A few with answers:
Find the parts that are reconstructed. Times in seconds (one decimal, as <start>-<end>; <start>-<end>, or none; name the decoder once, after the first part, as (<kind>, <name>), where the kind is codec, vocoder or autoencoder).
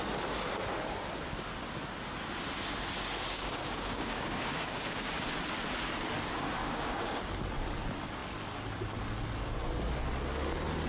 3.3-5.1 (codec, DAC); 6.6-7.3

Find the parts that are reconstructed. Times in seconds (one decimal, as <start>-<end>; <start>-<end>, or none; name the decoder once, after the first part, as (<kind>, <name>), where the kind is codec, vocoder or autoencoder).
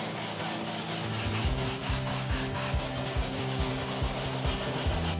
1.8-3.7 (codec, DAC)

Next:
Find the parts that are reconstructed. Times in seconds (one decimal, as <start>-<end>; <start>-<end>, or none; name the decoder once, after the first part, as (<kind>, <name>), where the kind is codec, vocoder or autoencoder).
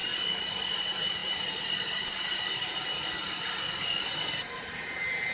0.0-0.7 (codec, DAC)